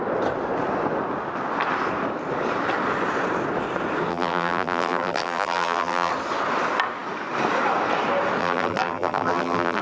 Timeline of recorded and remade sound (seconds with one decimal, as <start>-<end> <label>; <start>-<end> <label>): 0.0-4.1 recorded; 4.1-6.1 remade; 6.1-8.4 recorded; 8.4-9.8 remade